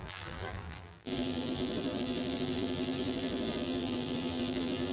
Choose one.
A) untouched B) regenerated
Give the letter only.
B